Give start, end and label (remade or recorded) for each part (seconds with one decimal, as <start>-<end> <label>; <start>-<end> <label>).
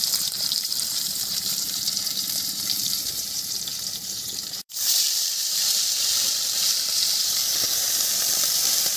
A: 0.0-9.0 remade